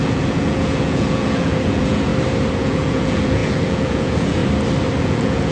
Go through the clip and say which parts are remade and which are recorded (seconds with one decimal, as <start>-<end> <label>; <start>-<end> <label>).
0.0-2.1 remade; 2.1-2.6 recorded; 2.6-4.4 remade; 4.4-5.0 recorded; 5.0-5.5 remade